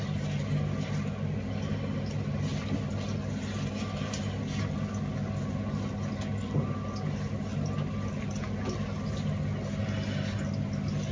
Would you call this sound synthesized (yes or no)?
no